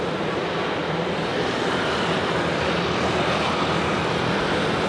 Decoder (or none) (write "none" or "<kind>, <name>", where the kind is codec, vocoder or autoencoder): vocoder, BigVGAN v2